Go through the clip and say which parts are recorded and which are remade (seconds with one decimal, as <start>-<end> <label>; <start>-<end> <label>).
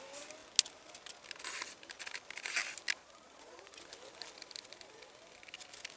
0.0-3.0 recorded; 3.0-3.8 remade; 3.8-6.0 recorded